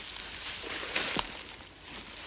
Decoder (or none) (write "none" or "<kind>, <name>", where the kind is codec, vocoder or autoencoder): none